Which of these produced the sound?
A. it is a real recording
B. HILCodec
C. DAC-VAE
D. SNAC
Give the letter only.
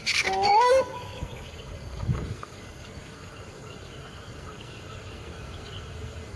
D